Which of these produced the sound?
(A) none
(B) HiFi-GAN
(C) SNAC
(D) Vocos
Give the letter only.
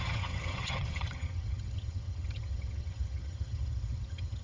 B